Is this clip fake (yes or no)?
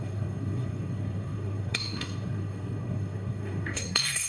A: yes